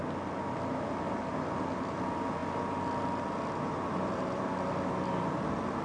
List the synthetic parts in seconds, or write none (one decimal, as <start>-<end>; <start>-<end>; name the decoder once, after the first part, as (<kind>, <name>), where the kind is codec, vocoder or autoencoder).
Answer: none